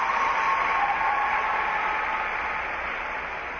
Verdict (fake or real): real